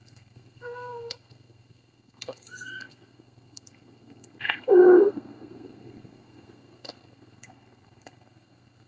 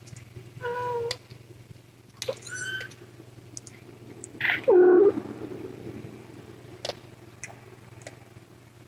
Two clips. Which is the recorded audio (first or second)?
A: second